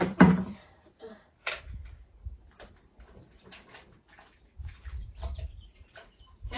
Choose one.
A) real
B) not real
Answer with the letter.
B